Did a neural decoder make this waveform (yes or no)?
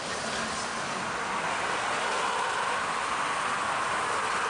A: no